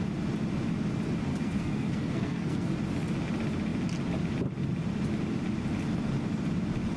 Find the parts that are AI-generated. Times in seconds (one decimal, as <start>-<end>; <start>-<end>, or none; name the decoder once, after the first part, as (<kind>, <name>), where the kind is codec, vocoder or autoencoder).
1.3-2.7 (codec, SNAC)